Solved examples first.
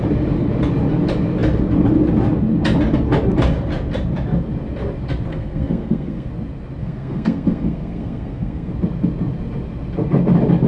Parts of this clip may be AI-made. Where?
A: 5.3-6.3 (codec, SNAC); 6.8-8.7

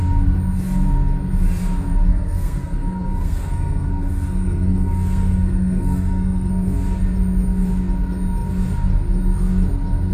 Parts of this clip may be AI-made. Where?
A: 2.1-6.5 (codec, SNAC)

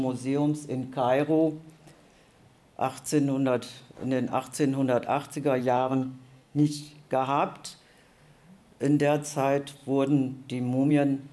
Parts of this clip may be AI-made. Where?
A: 5.6-6.8 (codec, SNAC)

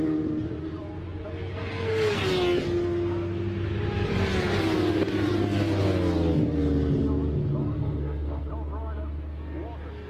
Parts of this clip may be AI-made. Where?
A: 1.5-2.2 (codec, SNAC); 7.6-8.5

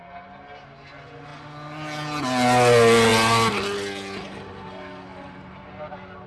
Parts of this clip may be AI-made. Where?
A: none